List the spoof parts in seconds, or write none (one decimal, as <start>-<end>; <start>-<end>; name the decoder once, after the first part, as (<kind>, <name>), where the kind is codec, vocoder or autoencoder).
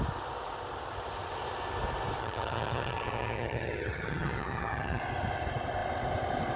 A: 2.2-5.0 (vocoder, HiFi-GAN)